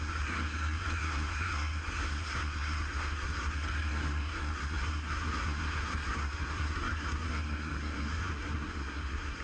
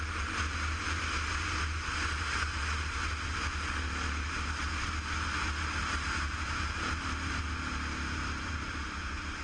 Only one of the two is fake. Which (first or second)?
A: first